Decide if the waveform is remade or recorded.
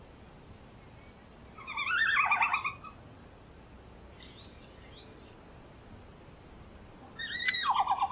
recorded